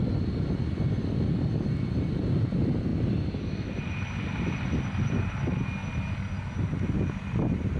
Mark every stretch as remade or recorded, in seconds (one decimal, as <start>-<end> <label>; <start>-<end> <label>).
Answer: 0.0-7.8 recorded